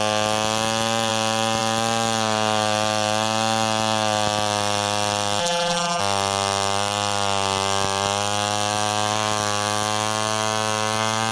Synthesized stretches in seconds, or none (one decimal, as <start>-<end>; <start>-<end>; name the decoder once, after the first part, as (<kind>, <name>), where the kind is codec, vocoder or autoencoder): 5.4-6.0 (vocoder, BigVGAN v2)